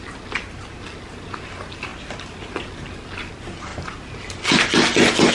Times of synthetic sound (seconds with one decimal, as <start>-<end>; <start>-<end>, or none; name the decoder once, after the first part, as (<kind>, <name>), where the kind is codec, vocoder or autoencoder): 0.0-1.9 (vocoder, BigVGAN v2); 3.2-3.7